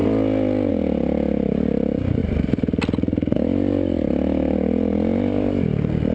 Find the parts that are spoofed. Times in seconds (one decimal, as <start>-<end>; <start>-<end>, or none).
none